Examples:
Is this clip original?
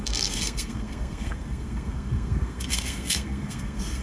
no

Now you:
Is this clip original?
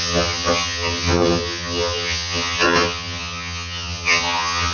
no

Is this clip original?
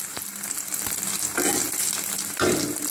yes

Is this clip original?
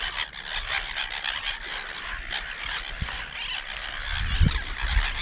yes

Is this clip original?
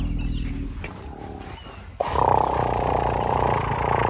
yes